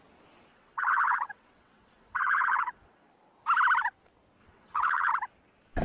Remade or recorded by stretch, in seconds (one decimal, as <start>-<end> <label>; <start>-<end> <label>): 0.0-0.5 recorded; 0.5-3.1 remade; 3.1-4.4 recorded; 4.4-5.1 remade; 5.1-5.8 recorded